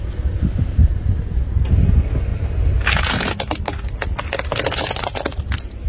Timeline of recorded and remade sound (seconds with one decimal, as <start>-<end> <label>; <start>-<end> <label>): 0.0-0.4 recorded; 0.4-0.9 remade; 0.9-5.9 recorded